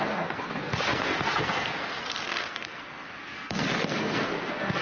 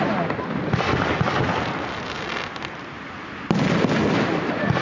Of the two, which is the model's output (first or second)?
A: first